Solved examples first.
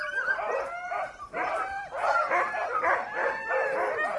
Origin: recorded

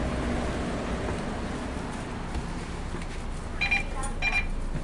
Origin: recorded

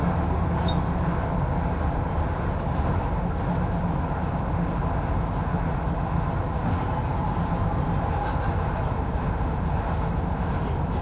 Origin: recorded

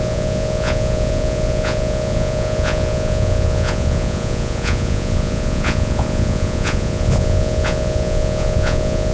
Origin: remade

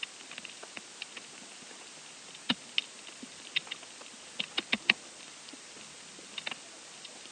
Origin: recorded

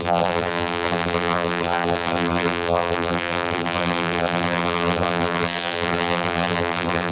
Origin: remade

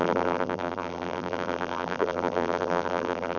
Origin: remade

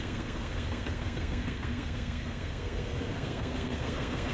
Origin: remade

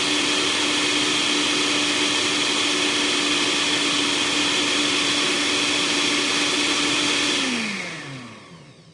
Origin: recorded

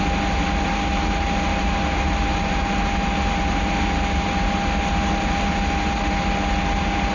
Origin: recorded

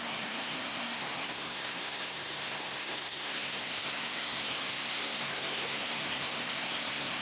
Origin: remade